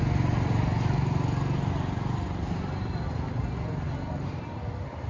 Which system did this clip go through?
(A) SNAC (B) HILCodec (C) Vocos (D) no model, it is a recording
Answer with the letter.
D